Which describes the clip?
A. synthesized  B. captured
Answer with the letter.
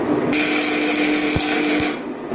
B